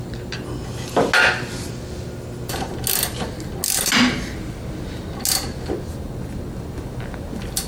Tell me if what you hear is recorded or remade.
recorded